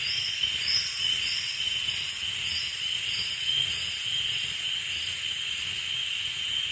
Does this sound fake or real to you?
fake